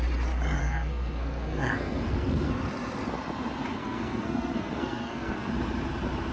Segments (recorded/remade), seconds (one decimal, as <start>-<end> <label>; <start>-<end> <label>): 0.0-0.6 recorded; 0.6-2.5 remade; 2.5-3.8 recorded; 3.8-5.5 remade; 5.5-6.3 recorded